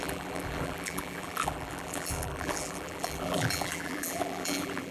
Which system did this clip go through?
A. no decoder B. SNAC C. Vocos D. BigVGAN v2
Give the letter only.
D